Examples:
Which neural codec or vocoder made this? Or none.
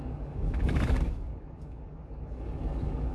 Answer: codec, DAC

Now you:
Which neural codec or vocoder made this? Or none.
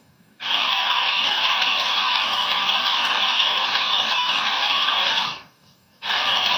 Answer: codec, DAC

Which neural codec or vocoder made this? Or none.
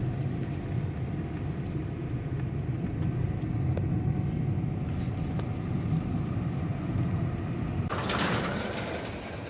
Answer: none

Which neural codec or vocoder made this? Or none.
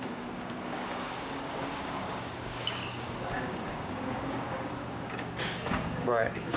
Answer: codec, DAC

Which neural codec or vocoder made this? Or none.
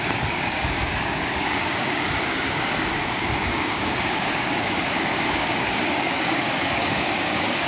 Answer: codec, DAC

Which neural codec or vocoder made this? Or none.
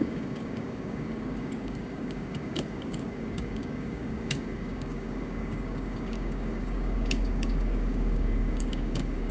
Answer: codec, DAC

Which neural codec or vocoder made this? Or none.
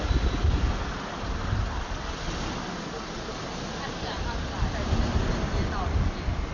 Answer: none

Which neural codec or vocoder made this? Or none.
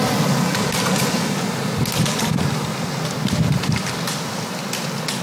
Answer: none